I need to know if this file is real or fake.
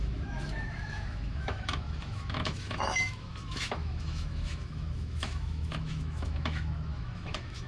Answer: fake